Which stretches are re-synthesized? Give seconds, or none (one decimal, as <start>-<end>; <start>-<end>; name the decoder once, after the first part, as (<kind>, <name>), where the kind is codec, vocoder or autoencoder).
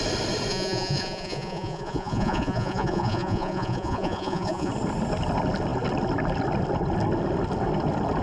0.5-4.7 (vocoder, Vocos)